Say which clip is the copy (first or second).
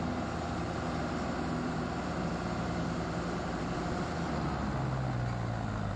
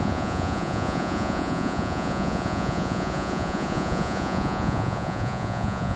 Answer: second